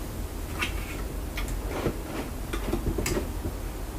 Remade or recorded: recorded